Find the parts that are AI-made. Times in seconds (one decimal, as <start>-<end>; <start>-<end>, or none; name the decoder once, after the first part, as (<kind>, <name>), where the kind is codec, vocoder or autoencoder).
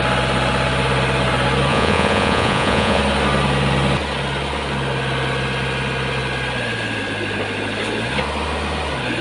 1.7-3.0 (vocoder, Vocos)